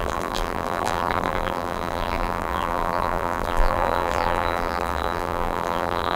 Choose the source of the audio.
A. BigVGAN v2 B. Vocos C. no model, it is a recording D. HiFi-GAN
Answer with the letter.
A